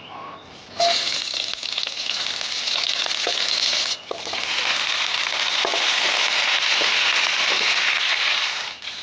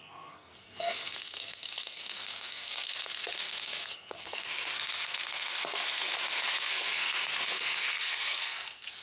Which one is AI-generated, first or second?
second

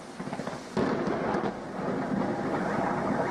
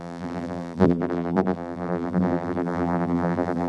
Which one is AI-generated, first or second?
second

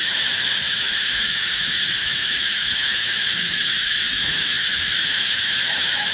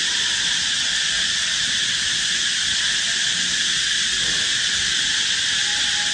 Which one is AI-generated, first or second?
first